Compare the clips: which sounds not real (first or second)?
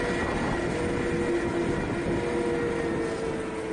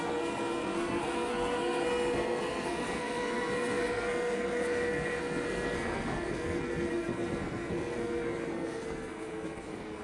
second